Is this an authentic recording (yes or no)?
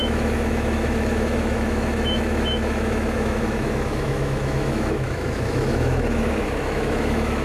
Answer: no